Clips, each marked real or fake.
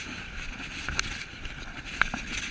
real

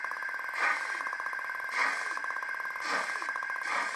real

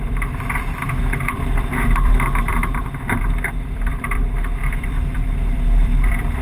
fake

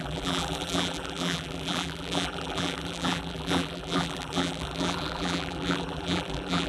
fake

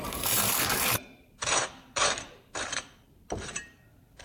fake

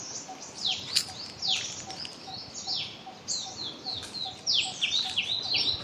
real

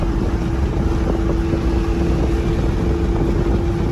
real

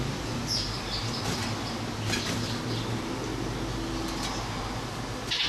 real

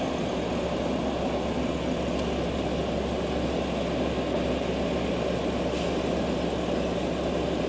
real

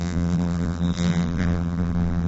fake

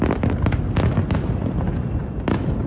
real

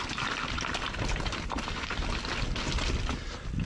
real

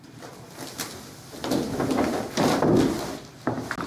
real